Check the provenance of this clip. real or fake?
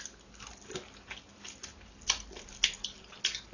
real